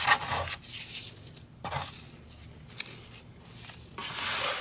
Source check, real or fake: real